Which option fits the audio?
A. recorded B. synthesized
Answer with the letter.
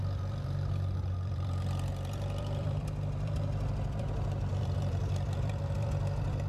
B